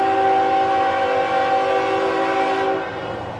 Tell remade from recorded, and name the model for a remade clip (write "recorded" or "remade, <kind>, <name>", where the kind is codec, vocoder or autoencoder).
recorded